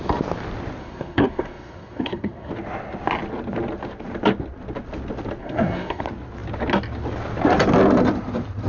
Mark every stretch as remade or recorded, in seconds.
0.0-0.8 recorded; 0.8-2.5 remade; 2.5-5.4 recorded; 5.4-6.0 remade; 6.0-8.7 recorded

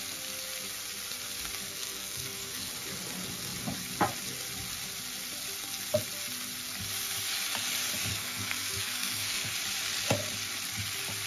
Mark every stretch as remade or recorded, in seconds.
0.0-1.7 recorded; 1.7-2.7 remade; 2.7-8.1 recorded; 8.1-9.5 remade; 9.5-11.3 recorded

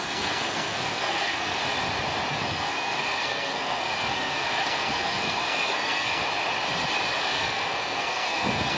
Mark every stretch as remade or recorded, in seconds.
0.0-1.6 remade; 1.6-2.3 recorded; 2.3-6.2 remade; 6.2-7.2 recorded; 7.2-8.8 remade

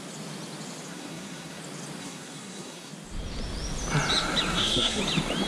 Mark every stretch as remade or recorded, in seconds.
0.0-0.9 recorded; 0.9-1.6 remade; 1.6-2.0 recorded; 2.0-2.9 remade; 2.9-4.5 recorded; 4.5-5.0 remade; 5.0-5.5 recorded

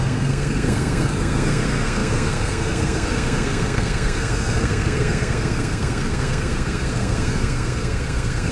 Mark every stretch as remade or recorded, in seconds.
0.0-8.5 remade

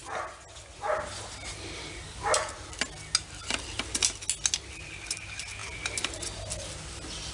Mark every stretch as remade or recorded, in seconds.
0.0-7.3 recorded

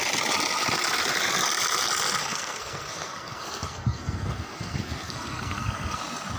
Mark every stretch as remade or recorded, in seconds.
0.0-2.2 recorded; 2.2-6.0 remade; 6.0-6.4 recorded

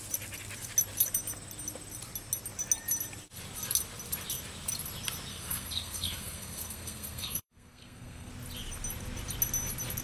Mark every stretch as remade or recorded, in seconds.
0.0-5.3 recorded; 5.3-8.3 remade; 8.3-10.0 recorded